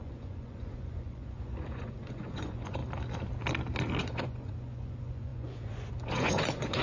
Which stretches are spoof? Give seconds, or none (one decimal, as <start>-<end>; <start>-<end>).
0.0-2.8; 4.0-6.8